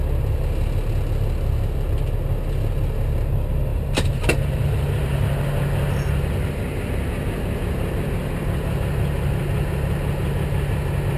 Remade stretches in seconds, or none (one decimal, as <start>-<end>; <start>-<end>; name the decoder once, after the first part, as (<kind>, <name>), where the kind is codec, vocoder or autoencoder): 3.7-5.0 (vocoder, BigVGAN v2)